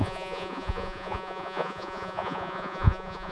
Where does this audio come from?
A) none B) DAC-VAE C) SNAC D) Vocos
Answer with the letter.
D